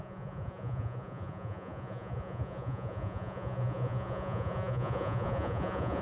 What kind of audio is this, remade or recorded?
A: remade